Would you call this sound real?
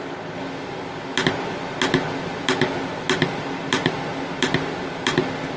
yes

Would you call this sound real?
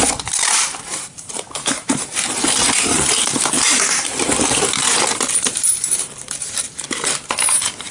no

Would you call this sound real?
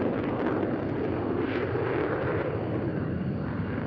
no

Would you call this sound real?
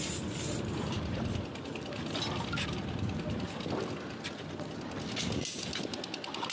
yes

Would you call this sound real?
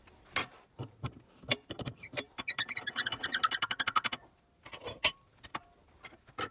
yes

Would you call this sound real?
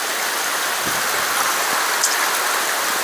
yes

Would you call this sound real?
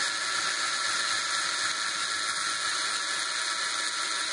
yes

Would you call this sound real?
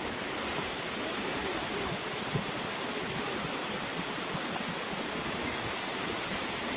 yes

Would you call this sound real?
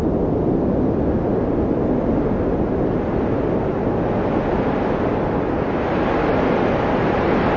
yes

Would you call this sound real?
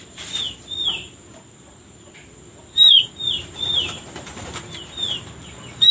no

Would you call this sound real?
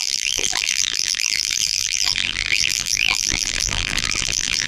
no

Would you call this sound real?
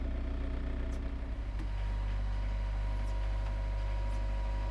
yes